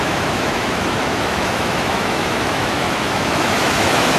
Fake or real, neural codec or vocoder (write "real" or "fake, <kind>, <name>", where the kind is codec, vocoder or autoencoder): fake, autoencoder, DAC-VAE